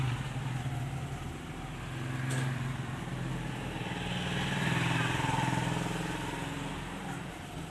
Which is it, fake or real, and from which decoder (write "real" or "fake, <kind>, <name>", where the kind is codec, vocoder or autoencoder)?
real